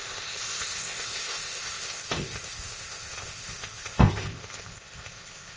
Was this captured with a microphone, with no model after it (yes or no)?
no